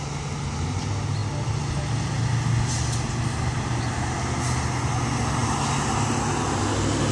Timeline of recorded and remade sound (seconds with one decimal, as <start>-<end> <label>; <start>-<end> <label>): 0.0-7.1 recorded